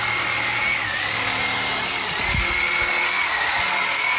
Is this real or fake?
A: real